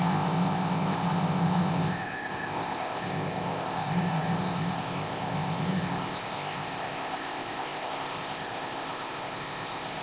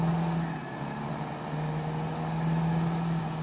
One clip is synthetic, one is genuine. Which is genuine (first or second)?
second